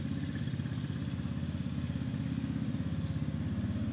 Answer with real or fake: real